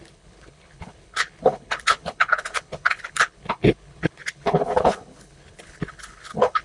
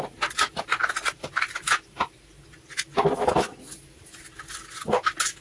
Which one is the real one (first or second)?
second